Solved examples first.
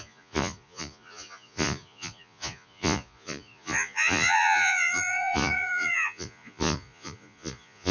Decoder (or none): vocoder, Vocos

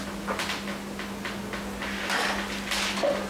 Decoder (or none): none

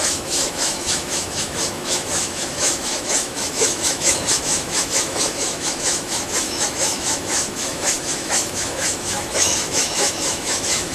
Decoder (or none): autoencoder, DAC-VAE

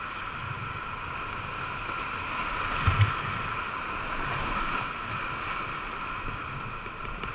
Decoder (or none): none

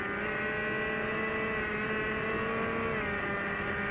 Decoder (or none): none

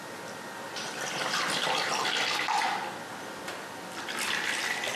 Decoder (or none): none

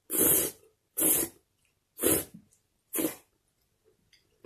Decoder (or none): none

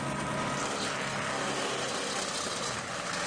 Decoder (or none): none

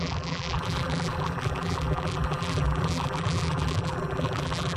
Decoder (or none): vocoder, BigVGAN v2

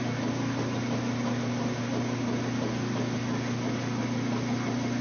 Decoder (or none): none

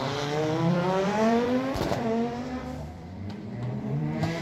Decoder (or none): vocoder, BigVGAN v2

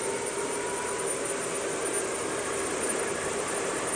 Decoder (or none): vocoder, BigVGAN v2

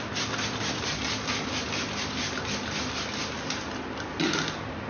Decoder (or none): none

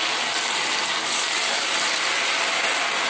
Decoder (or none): none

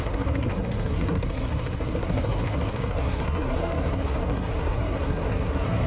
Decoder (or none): codec, SNAC